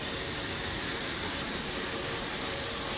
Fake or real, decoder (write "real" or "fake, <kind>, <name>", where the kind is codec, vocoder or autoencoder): real